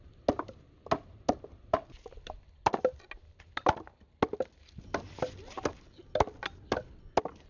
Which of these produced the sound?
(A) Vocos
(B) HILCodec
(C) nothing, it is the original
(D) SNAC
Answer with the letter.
C